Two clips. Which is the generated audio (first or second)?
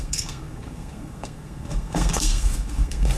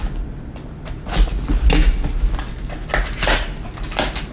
first